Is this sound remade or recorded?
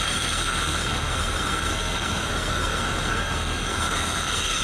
remade